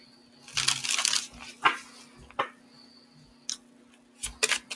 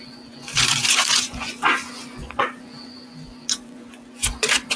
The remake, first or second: second